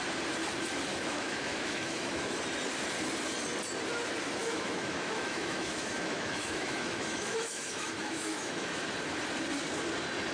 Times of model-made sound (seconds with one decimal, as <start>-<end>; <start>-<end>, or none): 0.9-2.4; 4.4-8.8